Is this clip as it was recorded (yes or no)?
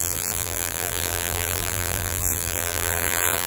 no